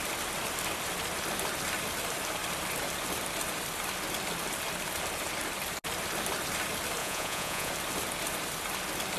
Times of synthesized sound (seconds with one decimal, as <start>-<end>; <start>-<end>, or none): 7.0-7.7